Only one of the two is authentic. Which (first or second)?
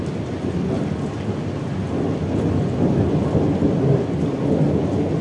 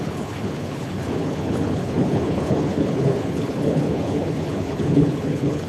first